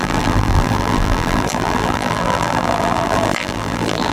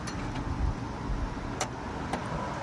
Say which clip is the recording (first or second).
second